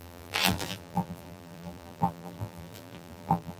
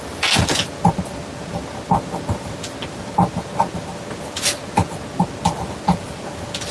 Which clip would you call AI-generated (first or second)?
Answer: first